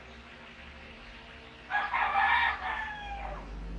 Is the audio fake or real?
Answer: real